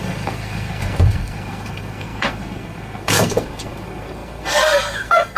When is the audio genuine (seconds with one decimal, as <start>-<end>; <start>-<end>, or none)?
none